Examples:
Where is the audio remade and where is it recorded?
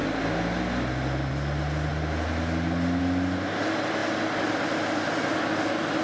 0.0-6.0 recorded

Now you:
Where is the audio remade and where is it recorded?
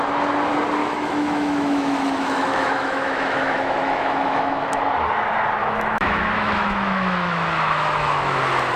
0.0-0.8 recorded; 0.8-4.8 remade; 4.8-5.6 recorded; 5.6-8.4 remade; 8.4-8.8 recorded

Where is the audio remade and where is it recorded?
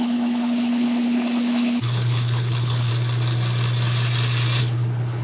0.0-2.9 remade; 2.9-4.6 recorded; 4.6-5.2 remade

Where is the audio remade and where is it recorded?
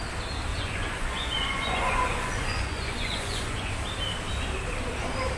0.0-0.5 recorded; 0.5-3.7 remade; 3.7-5.4 recorded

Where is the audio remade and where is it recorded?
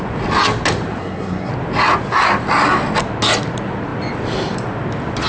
0.0-1.0 recorded; 1.0-1.5 remade; 1.5-5.3 recorded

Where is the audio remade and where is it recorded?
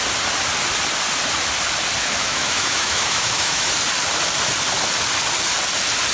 0.0-2.2 recorded; 2.2-3.7 remade; 3.7-6.1 recorded